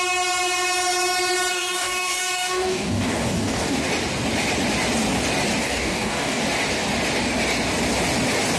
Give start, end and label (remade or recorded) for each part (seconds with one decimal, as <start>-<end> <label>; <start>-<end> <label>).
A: 0.0-1.5 recorded; 1.5-3.9 remade; 3.9-5.6 recorded; 5.6-6.4 remade; 6.4-8.6 recorded